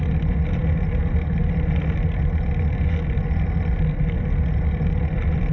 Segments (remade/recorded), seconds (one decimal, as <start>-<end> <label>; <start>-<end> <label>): 0.0-5.5 recorded